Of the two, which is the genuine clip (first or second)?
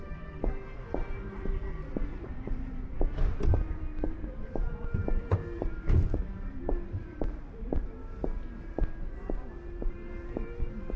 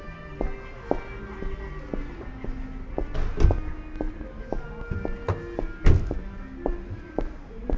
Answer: second